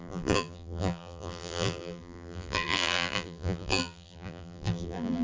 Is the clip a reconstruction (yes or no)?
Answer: yes